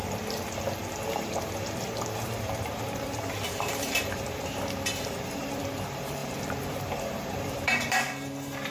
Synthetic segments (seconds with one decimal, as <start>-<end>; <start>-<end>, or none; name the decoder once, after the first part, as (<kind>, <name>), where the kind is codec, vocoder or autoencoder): 0.0-8.7 (vocoder, BigVGAN v2)